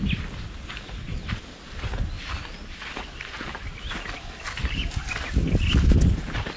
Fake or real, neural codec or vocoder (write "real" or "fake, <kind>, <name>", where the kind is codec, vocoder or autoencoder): real